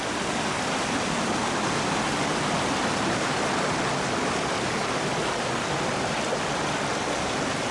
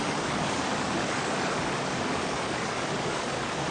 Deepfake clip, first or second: second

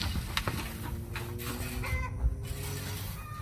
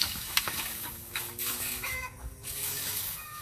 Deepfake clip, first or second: second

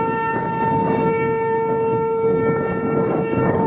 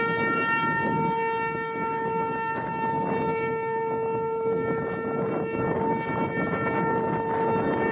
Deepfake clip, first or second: first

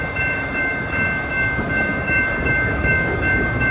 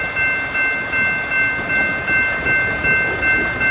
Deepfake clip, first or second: first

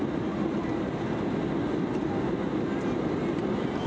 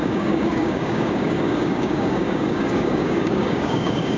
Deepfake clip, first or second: second